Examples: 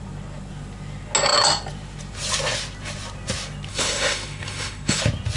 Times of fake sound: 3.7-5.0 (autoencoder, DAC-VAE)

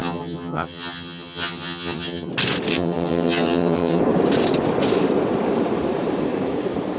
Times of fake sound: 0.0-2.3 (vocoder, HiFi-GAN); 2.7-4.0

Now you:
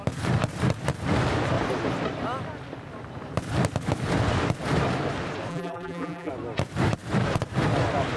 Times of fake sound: 5.5-6.3 (vocoder, BigVGAN v2)